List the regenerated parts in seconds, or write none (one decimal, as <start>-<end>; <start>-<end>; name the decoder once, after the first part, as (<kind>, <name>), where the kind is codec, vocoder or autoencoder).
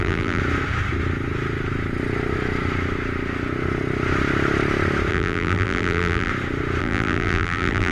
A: 0.0-0.4 (vocoder, BigVGAN v2); 5.1-6.3; 6.8-7.9